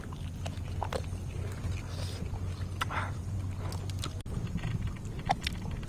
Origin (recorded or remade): recorded